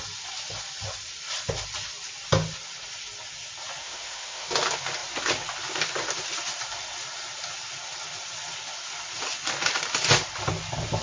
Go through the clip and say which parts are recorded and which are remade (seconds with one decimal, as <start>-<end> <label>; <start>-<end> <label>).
0.0-3.8 recorded; 3.8-4.5 remade; 4.5-11.0 recorded

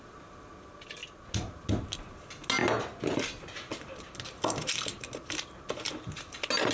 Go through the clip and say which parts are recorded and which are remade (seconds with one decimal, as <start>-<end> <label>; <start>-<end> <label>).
0.0-6.7 recorded